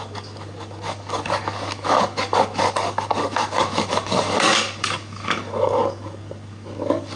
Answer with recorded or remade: remade